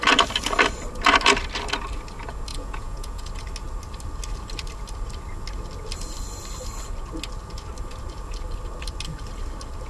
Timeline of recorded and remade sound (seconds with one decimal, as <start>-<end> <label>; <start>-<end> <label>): 0.0-2.5 recorded; 2.5-3.3 remade; 3.3-9.9 recorded